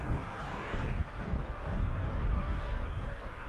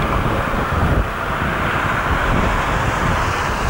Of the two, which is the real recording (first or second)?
second